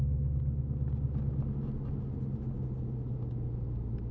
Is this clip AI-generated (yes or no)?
no